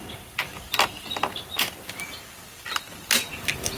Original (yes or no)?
yes